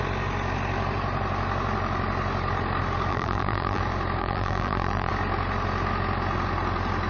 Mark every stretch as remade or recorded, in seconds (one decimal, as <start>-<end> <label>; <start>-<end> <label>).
0.0-3.1 recorded; 3.1-3.8 remade; 3.8-4.2 recorded; 4.2-5.1 remade; 5.1-7.1 recorded

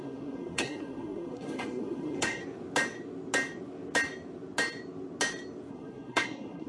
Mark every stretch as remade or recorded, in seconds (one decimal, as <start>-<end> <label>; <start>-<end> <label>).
0.0-2.4 remade; 2.4-5.7 recorded; 5.7-6.7 remade

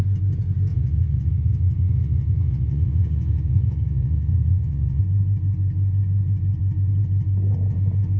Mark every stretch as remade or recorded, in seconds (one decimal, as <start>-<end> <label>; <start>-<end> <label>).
0.0-0.7 recorded; 0.7-5.0 remade; 5.0-8.2 recorded

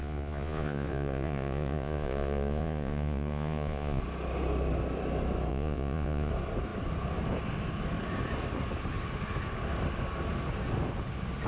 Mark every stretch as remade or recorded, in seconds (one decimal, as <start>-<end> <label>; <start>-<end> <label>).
0.0-4.0 remade; 4.0-5.5 recorded; 5.5-6.3 remade; 6.3-11.5 recorded